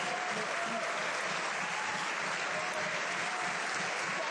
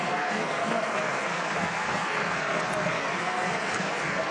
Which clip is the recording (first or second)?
first